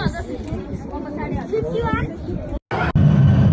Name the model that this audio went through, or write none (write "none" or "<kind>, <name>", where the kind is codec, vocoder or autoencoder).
none